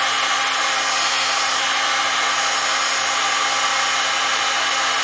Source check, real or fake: real